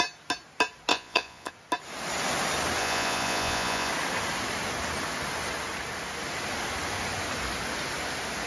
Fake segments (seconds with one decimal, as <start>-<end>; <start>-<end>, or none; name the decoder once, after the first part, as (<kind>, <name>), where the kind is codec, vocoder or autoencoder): 0.9-1.5 (vocoder, Vocos); 2.8-3.9